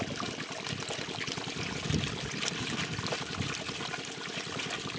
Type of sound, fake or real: real